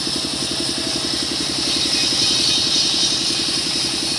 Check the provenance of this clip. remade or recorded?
recorded